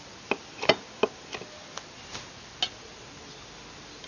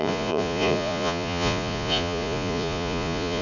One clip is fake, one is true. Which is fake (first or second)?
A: second